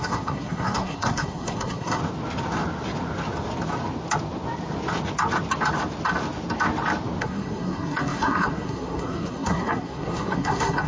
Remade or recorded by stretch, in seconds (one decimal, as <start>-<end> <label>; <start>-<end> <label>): 0.0-2.0 remade; 2.0-7.2 recorded; 7.2-10.9 remade